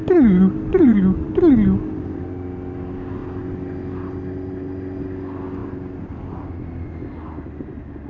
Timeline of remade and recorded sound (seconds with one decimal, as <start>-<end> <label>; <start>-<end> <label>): 0.0-0.7 recorded; 0.7-1.3 remade; 1.3-8.1 recorded